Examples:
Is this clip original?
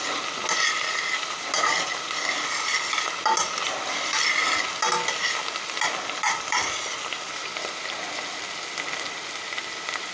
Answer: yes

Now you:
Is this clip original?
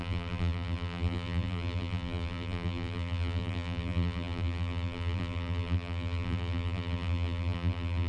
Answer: no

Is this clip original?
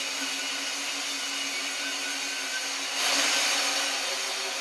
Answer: yes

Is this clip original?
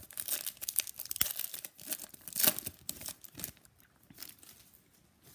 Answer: yes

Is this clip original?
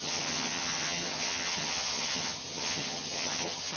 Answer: no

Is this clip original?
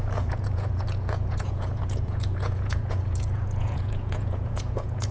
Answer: no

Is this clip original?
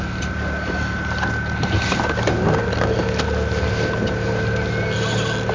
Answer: yes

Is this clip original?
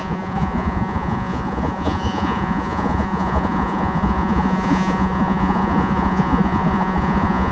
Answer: no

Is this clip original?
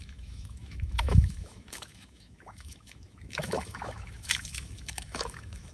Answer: no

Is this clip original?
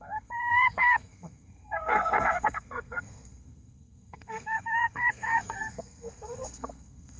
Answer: no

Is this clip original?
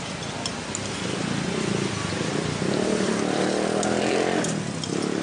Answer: yes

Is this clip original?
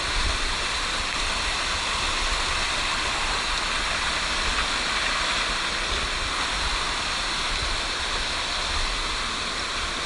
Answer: yes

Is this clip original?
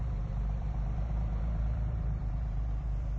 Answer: no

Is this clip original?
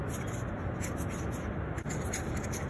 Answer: yes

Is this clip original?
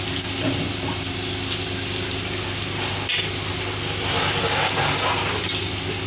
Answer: yes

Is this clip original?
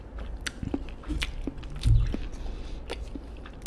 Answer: yes